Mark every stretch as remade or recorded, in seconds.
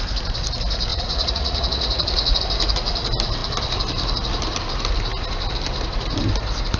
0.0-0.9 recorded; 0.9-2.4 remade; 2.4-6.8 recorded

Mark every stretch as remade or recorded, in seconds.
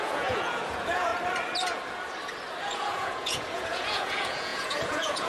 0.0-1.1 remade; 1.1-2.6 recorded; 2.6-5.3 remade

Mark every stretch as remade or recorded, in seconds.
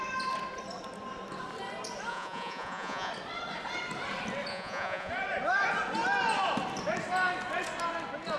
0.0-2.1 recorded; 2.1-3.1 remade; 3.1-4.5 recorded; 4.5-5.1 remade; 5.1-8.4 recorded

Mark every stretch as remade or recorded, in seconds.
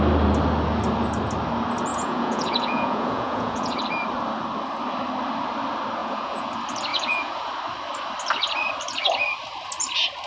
0.0-1.9 recorded; 1.9-3.8 remade; 3.8-6.0 recorded; 6.0-6.5 remade; 6.5-6.9 recorded; 6.9-7.5 remade; 7.5-10.3 recorded